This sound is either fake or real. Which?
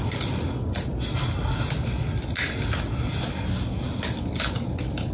real